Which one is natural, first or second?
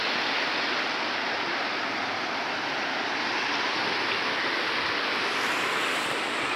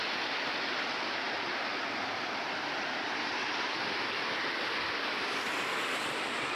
first